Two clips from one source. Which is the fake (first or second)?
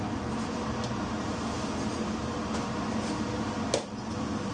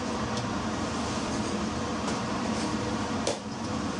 second